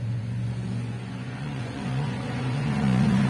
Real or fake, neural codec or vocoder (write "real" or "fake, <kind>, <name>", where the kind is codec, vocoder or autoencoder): fake, vocoder, Vocos